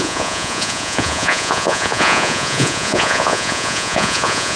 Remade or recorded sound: remade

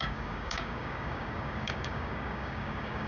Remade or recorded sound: remade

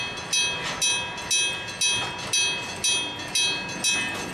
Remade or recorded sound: recorded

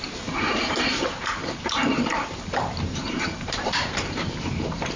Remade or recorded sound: remade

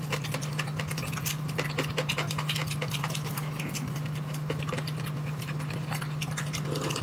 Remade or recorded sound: recorded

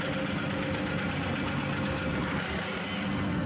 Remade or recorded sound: recorded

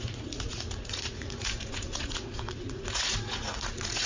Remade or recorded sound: remade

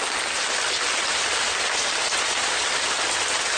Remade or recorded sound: recorded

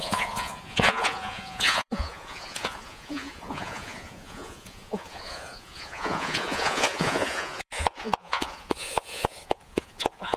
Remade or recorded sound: remade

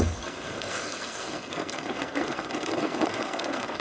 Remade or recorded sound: remade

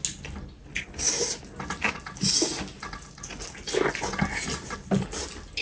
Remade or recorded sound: recorded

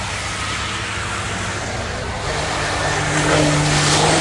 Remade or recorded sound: recorded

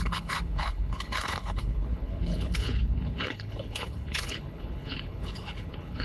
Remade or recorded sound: remade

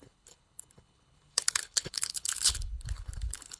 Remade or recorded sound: remade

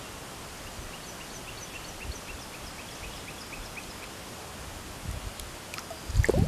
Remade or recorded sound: recorded